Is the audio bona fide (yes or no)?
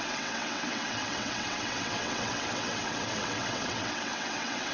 no